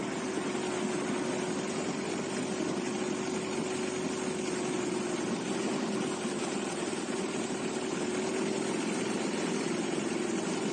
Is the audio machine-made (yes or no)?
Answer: no